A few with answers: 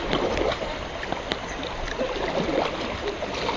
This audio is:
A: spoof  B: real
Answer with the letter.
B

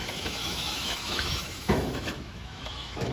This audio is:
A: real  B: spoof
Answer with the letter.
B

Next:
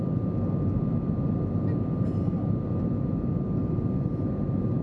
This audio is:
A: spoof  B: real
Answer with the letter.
B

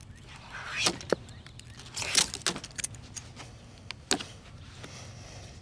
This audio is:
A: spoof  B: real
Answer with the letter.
B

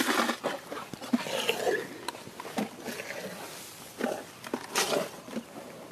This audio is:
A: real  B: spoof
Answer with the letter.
A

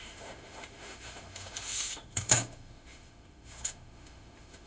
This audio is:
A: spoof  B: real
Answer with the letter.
A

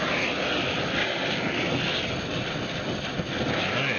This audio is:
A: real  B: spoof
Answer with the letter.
A